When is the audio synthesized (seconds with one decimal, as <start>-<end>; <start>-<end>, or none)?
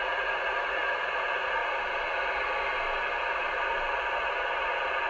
0.0-1.6